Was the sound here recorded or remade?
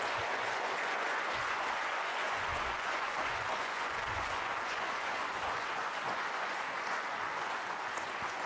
remade